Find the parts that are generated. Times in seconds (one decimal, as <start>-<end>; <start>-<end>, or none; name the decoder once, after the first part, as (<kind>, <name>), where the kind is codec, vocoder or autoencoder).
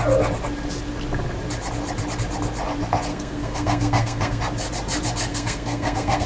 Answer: 3.1-4.4 (codec, SNAC); 5.3-6.3